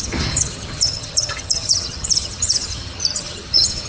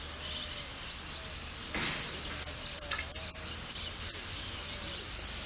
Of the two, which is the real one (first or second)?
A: second